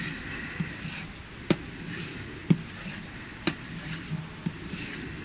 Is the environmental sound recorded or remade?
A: recorded